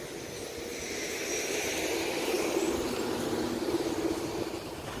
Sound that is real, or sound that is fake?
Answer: real